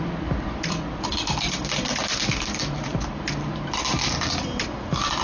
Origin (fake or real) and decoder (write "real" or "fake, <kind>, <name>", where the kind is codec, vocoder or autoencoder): fake, vocoder, BigVGAN v2